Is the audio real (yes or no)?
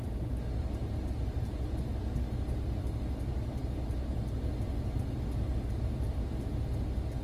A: yes